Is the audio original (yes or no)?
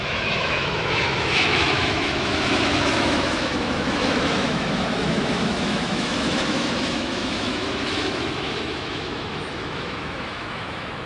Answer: no